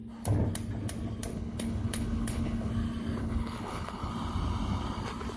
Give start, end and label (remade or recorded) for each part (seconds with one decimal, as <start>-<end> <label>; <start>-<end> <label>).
0.0-1.3 recorded; 1.3-2.7 remade; 2.7-3.2 recorded; 3.2-4.1 remade; 4.1-5.4 recorded